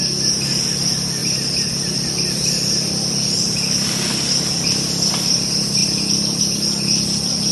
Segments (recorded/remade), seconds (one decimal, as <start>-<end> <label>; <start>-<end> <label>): 0.0-1.2 recorded; 1.2-5.1 remade; 5.1-7.5 recorded